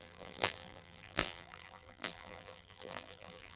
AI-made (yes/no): yes